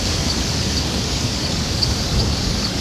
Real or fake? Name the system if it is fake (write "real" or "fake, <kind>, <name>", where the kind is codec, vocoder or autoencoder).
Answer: fake, codec, DAC